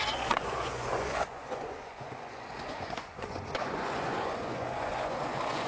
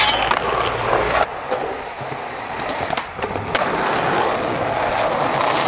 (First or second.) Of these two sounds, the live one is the second